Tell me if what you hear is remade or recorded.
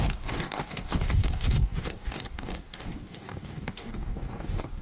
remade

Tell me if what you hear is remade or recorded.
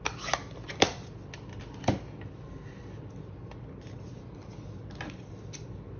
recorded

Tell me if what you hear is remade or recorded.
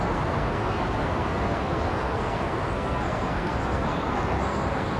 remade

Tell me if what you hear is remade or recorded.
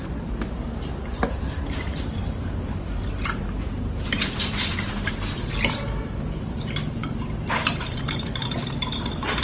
remade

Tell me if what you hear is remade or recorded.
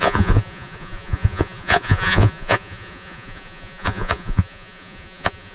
remade